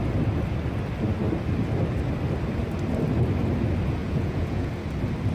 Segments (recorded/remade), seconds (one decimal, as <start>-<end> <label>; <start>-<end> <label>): 0.0-4.0 recorded; 4.0-4.7 remade; 4.7-5.3 recorded